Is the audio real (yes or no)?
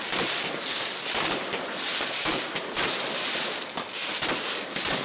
no